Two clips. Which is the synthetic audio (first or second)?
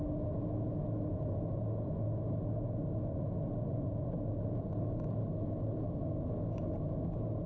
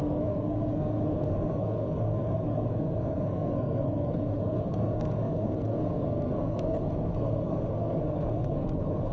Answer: second